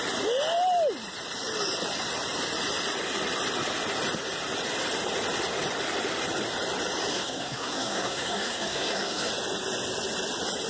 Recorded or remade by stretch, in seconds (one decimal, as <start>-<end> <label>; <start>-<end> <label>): 0.0-7.1 recorded; 7.1-9.3 remade; 9.3-10.7 recorded

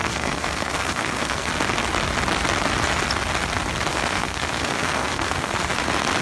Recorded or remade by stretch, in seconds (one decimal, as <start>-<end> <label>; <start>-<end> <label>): 0.0-1.5 remade; 1.5-3.9 recorded; 3.9-5.6 remade; 5.6-6.2 recorded

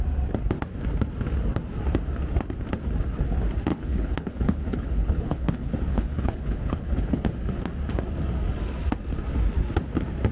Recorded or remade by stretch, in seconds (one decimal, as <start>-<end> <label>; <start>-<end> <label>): 0.0-3.7 recorded; 3.7-7.2 remade; 7.2-10.3 recorded

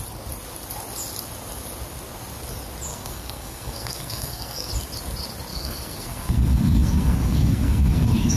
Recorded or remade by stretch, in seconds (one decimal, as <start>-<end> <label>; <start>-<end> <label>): 0.0-2.9 recorded; 2.9-4.7 remade; 4.7-5.5 recorded; 5.5-8.4 remade

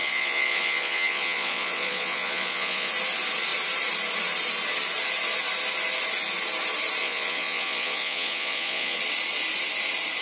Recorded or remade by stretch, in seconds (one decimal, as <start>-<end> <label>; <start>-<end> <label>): 0.0-2.9 remade; 2.9-7.0 recorded; 7.0-9.0 remade; 9.0-10.2 recorded

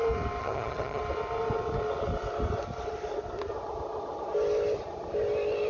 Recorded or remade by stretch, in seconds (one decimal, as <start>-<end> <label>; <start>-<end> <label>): 0.0-0.4 recorded; 0.4-1.0 remade; 1.0-5.7 recorded

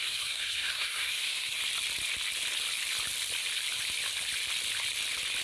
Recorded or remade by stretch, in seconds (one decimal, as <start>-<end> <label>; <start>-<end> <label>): 0.0-1.6 remade; 1.6-5.4 recorded

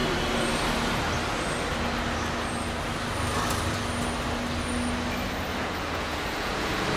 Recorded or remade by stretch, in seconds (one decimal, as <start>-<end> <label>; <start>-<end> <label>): 0.0-5.5 recorded; 5.5-7.0 remade